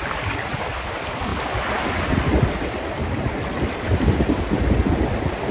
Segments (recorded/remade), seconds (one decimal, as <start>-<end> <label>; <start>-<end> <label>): 0.0-5.5 recorded